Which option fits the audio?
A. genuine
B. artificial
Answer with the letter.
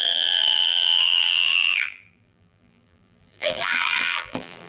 B